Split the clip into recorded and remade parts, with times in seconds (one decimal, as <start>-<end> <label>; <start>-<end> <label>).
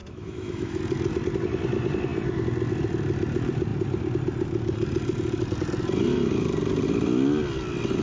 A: 0.0-0.8 remade; 0.8-8.0 recorded